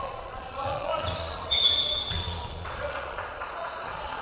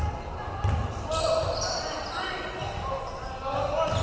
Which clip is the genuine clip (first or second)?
second